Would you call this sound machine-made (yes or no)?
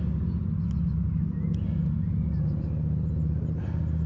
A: no